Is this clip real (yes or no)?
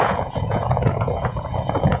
no